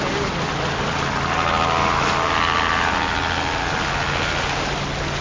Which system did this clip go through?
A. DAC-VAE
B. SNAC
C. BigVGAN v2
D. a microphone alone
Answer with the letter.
D